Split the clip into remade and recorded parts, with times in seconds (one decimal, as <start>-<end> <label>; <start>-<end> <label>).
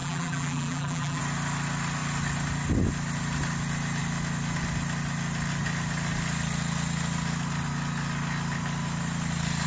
0.0-1.2 remade; 1.2-9.7 recorded